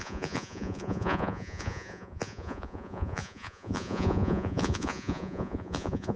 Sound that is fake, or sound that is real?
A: fake